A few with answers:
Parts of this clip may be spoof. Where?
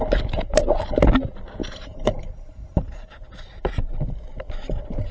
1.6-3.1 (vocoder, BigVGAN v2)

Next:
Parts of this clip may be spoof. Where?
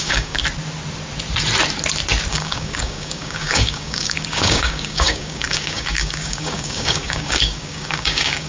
0.0-0.4 (codec, DAC); 2.3-8.5